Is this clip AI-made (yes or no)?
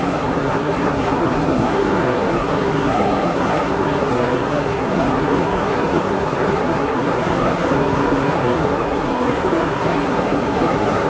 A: yes